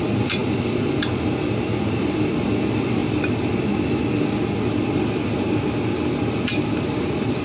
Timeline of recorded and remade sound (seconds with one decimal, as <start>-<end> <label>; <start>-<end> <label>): 0.0-0.4 remade; 0.4-1.5 recorded; 1.5-3.0 remade; 3.0-7.4 recorded

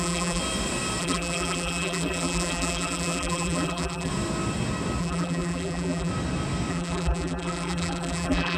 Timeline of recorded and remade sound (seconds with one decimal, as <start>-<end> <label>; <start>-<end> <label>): 0.0-0.4 remade; 0.4-1.0 recorded; 1.0-4.1 remade; 4.1-5.0 recorded; 5.0-6.1 remade; 6.1-6.7 recorded; 6.7-8.6 remade

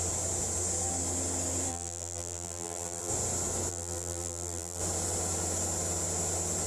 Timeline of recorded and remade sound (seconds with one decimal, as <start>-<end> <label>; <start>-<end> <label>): 0.0-1.7 recorded; 1.7-3.1 remade; 3.1-3.7 recorded; 3.7-4.8 remade; 4.8-6.7 recorded

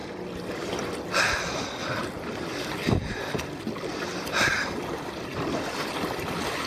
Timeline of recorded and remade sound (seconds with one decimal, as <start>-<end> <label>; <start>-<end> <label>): 0.0-6.7 recorded

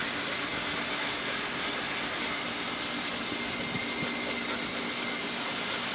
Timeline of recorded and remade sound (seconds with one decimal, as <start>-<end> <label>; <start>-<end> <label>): 0.0-5.9 recorded

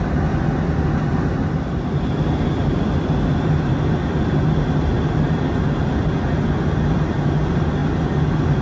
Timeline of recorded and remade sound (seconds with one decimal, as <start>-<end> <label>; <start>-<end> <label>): 0.0-8.6 recorded

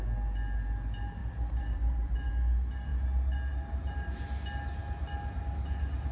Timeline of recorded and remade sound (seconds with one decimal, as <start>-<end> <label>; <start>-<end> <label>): 0.0-1.2 recorded; 1.2-2.3 remade; 2.3-6.1 recorded